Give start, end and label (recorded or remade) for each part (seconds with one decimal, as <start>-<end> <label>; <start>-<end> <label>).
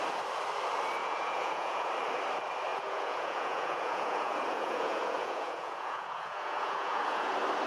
0.0-1.0 recorded; 1.0-1.9 remade; 1.9-2.7 recorded; 2.7-7.3 remade; 7.3-7.7 recorded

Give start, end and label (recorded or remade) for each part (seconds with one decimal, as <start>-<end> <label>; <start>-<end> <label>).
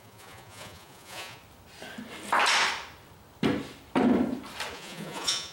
0.0-1.4 remade; 1.4-4.7 recorded; 4.7-5.5 remade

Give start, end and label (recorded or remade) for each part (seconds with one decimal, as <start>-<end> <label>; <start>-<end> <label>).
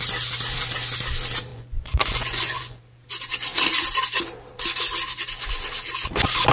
0.0-1.5 recorded; 1.5-2.8 remade; 2.8-6.5 recorded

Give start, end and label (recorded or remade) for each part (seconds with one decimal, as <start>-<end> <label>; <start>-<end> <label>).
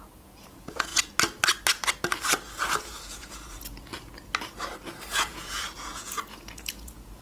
0.0-0.9 remade; 0.9-2.8 recorded; 2.8-3.9 remade; 3.9-5.1 recorded; 5.1-7.2 remade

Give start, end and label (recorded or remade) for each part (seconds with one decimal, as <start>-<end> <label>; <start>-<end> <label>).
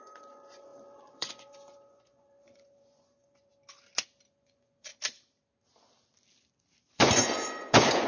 0.0-3.5 remade; 3.5-4.3 recorded; 4.3-4.9 remade; 4.9-6.9 recorded; 6.9-8.1 remade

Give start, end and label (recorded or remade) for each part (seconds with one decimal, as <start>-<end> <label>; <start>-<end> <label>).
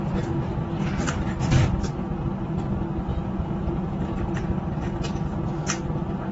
0.0-3.1 recorded; 3.1-4.2 remade; 4.2-6.3 recorded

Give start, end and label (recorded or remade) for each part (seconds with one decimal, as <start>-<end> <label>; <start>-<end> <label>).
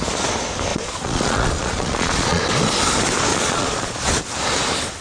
0.0-0.7 recorded; 0.7-2.4 remade; 2.4-3.3 recorded; 3.3-4.0 remade; 4.0-5.0 recorded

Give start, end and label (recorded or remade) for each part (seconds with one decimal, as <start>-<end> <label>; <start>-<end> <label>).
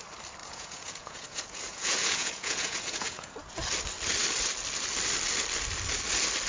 0.0-0.4 recorded; 0.4-3.3 remade; 3.3-6.5 recorded